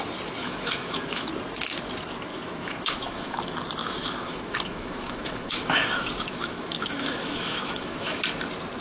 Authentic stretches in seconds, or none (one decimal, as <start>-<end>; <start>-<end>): 0.0-0.4; 1.3-2.3; 3.4-3.8; 8.2-8.8